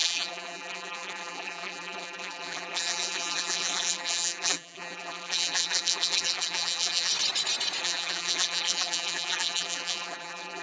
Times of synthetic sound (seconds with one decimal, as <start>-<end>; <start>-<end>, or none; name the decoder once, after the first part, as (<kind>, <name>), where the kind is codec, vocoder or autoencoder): 0.0-7.1 (vocoder, BigVGAN v2); 7.8-10.6